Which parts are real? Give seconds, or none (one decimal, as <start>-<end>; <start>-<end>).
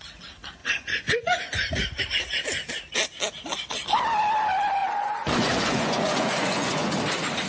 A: 0.0-0.6; 2.0-4.8; 7.0-7.5